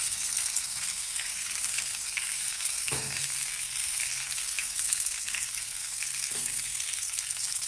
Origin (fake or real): fake